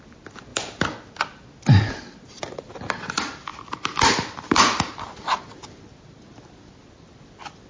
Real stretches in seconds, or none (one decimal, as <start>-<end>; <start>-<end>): 0.0-3.5; 4.3-7.7